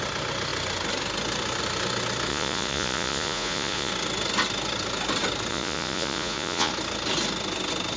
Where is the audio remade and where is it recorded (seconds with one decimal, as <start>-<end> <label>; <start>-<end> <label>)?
0.0-2.3 recorded; 2.3-3.9 remade; 3.9-5.5 recorded; 5.5-6.7 remade; 6.7-8.0 recorded